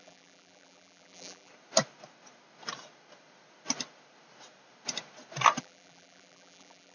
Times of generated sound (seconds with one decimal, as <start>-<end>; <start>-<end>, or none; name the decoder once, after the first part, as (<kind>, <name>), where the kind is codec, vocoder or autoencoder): 0.0-1.5 (vocoder, BigVGAN v2); 5.6-6.9